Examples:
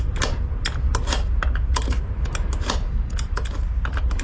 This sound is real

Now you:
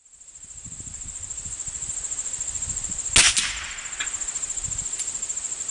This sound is real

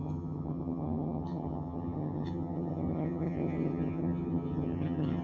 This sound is fake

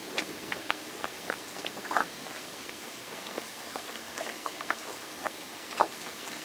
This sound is fake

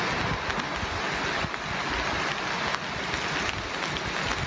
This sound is real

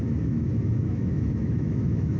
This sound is fake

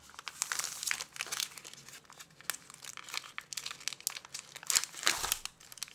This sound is real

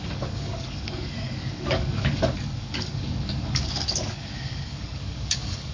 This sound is fake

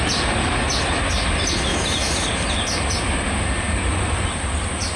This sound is real